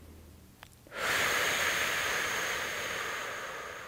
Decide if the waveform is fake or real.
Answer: real